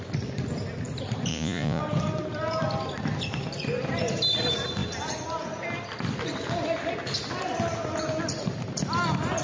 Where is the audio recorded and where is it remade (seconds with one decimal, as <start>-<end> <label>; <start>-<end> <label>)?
0.0-1.3 recorded; 1.3-1.8 remade; 1.8-9.4 recorded